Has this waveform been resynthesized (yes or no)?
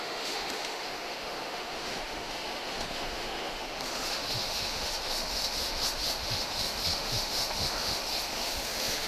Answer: yes